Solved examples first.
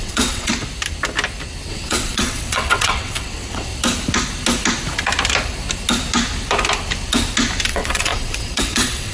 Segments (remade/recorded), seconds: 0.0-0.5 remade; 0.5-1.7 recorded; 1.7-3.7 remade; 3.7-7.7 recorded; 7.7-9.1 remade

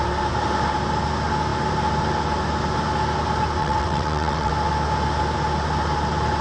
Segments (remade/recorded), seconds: 0.0-3.6 recorded; 3.6-4.5 remade; 4.5-6.4 recorded

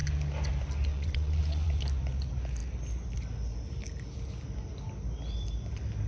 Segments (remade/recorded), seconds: 0.0-0.9 recorded; 0.9-1.8 remade; 1.8-6.1 recorded